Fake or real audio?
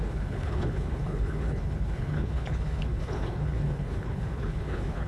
fake